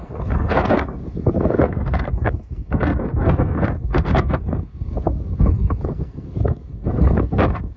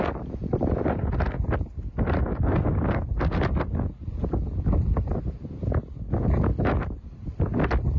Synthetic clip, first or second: first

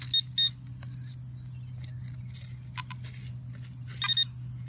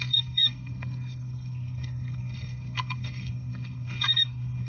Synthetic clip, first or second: second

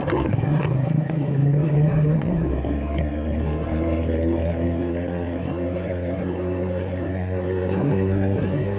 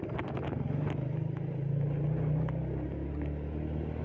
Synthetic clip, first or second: first